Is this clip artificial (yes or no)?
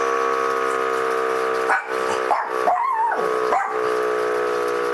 no